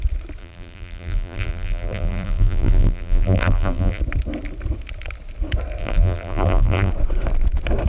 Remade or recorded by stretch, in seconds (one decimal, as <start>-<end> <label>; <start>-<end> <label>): 0.0-0.4 recorded; 0.4-4.0 remade; 4.0-5.8 recorded; 5.8-6.9 remade; 6.9-7.9 recorded